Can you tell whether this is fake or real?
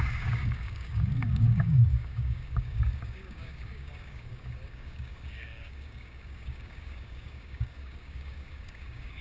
fake